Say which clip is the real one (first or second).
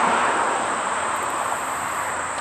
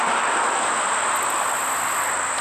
second